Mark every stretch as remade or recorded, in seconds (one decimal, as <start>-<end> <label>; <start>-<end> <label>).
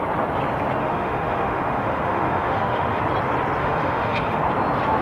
0.0-0.8 recorded; 0.8-3.0 remade; 3.0-3.6 recorded; 3.6-4.4 remade; 4.4-5.0 recorded